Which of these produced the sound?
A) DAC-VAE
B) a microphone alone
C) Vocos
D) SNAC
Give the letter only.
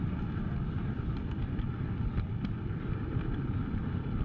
B